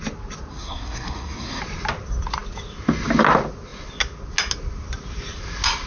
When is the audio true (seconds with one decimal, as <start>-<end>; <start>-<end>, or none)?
0.0-0.5; 1.6-5.9